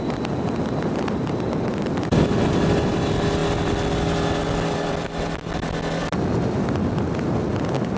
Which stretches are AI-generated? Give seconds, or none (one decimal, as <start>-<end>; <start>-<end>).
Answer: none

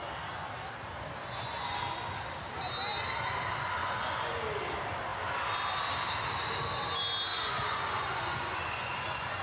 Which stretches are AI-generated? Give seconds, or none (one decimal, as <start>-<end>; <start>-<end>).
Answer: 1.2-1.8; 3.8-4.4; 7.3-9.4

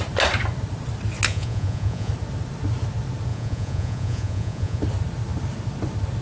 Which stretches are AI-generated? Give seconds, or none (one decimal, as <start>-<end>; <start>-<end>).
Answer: 1.3-2.1; 3.3-4.8

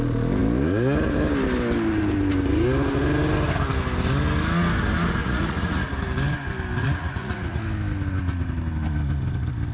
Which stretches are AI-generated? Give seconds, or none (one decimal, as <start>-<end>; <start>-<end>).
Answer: 5.2-5.9; 6.8-7.6

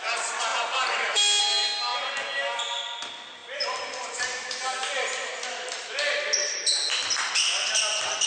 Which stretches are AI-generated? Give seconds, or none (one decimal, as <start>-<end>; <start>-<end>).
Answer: none

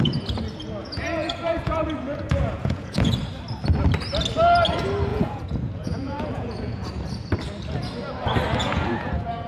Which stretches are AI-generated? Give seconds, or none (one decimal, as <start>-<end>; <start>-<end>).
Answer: 0.8-3.1; 5.1-6.9; 8.6-9.5

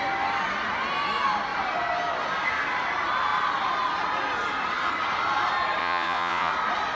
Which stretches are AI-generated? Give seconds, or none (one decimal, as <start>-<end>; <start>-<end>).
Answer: 5.8-6.5